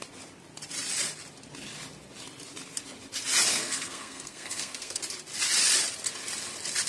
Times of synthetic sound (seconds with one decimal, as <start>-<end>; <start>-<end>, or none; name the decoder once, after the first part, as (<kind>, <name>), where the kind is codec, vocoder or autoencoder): 3.5-5.0 (codec, SNAC)

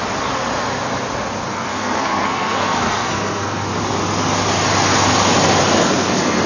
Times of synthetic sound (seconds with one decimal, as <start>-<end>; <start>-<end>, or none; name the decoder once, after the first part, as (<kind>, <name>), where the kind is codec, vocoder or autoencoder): 1.5-3.7 (codec, SNAC); 5.8-6.5

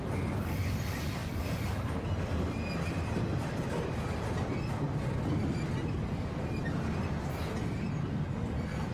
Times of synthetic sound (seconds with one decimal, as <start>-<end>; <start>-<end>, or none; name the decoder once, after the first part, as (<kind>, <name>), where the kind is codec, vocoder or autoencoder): none

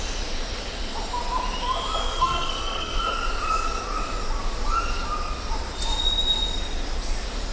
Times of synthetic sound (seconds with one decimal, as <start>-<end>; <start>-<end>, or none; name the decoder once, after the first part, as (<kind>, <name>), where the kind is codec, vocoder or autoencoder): 2.0-3.0 (codec, SNAC)

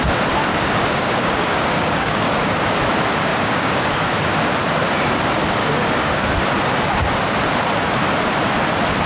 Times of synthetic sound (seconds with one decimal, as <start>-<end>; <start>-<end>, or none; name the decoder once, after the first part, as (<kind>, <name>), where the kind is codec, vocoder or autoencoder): 0.5-2.8 (codec, DAC); 3.3-4.3; 5.6-6.4

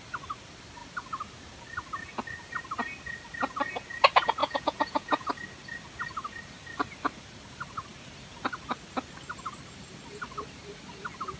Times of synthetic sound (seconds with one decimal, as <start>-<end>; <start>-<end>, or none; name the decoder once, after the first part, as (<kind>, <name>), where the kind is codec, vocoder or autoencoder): 4.4-5.3 (vocoder, Vocos)

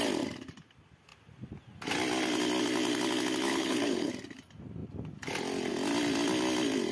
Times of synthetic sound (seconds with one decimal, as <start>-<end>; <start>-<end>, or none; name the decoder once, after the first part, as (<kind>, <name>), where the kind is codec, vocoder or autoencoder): 3.5-4.1 (codec, HILCodec)